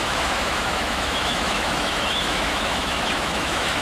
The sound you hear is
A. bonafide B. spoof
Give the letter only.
B